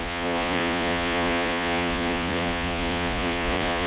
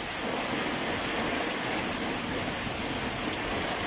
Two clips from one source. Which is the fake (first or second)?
first